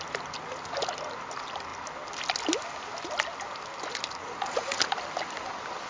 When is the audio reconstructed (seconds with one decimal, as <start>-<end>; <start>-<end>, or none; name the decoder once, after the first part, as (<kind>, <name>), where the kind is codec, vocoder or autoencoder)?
4.2-4.8 (vocoder, Vocos)